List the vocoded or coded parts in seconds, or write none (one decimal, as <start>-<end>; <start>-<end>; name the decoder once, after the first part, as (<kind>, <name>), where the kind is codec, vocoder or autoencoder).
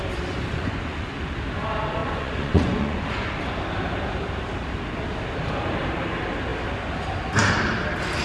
0.5-1.1 (vocoder, Vocos); 2.0-3.4